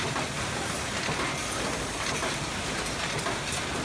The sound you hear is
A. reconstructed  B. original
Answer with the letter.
B